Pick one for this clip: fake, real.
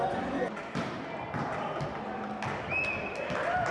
real